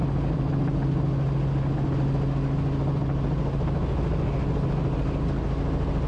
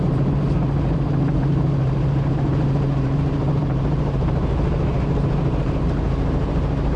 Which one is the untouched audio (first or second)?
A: first